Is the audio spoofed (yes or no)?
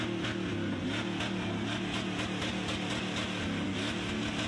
no